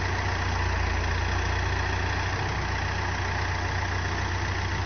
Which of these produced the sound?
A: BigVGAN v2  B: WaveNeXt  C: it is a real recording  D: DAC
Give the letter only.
C